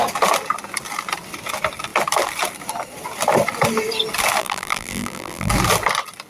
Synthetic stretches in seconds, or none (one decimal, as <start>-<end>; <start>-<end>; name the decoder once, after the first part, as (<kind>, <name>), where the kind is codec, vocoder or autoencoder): 4.4-5.5 (vocoder, BigVGAN v2)